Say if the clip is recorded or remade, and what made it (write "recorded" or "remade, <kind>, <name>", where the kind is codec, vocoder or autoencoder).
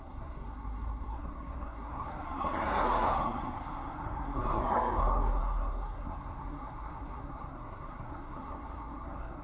remade, codec, SNAC